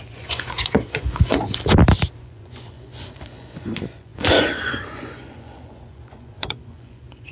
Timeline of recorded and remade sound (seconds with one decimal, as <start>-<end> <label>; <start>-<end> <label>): 0.0-1.4 remade; 1.4-2.2 recorded; 2.2-7.3 remade